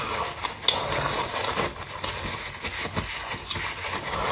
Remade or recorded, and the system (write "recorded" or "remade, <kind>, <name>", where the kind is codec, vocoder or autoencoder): recorded